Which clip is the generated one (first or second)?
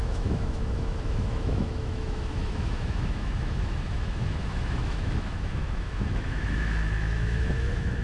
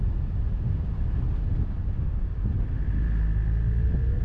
first